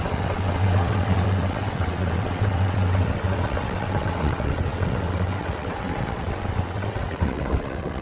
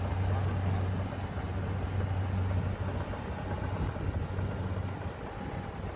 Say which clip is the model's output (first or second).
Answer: first